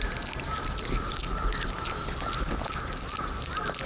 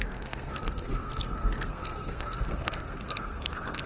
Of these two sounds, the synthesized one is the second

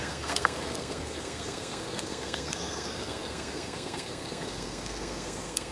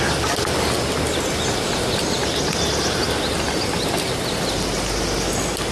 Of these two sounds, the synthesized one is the first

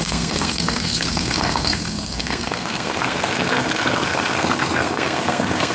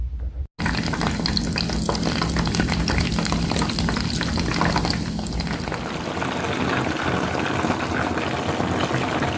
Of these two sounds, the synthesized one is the first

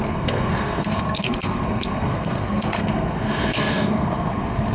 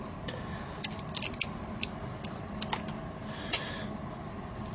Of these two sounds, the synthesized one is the first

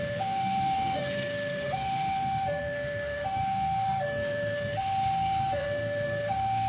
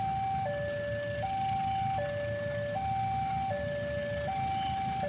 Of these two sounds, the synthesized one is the first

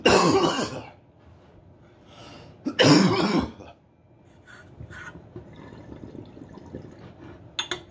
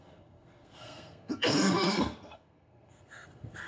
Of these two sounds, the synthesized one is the second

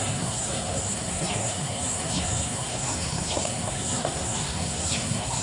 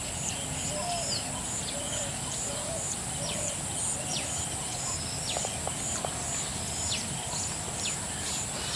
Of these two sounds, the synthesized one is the first